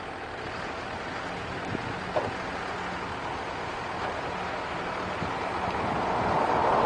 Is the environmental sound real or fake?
real